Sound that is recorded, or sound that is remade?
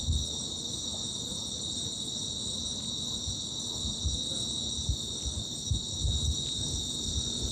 recorded